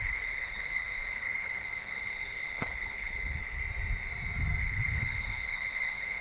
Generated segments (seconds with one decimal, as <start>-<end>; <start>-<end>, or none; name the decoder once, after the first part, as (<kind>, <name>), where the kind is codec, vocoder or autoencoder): 0.0-3.6 (codec, HILCodec); 4.6-6.2